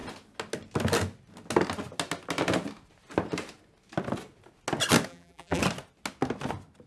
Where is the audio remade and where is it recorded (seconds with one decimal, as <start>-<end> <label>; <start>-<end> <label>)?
0.0-5.1 recorded; 5.1-5.6 remade; 5.6-6.9 recorded